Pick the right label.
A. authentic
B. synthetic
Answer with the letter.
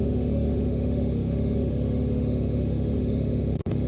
B